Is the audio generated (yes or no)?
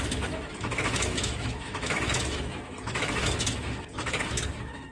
yes